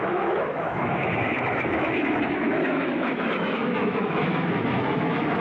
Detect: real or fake fake